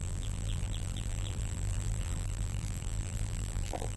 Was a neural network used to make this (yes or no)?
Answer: yes